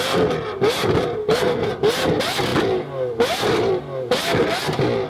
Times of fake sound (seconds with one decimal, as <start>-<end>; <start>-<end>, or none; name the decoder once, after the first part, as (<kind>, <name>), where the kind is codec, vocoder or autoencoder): 1.2-1.7 (codec, SNAC)